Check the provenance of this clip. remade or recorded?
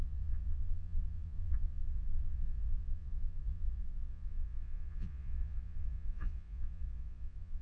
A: remade